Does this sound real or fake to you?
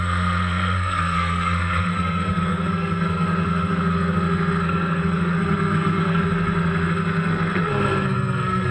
fake